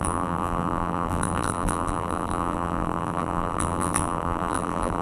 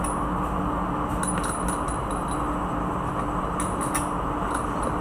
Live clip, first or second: second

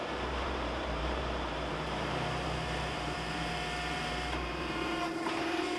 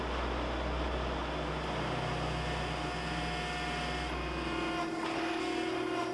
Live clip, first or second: second